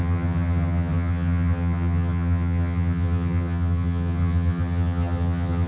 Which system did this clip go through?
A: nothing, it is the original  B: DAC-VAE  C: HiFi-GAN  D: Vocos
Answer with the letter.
C